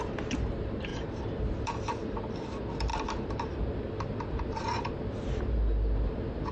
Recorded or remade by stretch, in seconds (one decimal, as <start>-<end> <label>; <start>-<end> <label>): 0.0-0.9 recorded; 0.9-2.3 remade; 2.3-2.9 recorded; 2.9-5.4 remade; 5.4-6.5 recorded